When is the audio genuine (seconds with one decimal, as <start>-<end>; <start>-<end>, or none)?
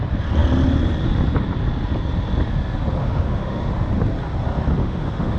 0.0-3.0; 3.7-4.8